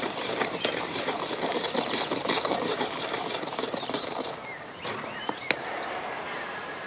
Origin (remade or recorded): remade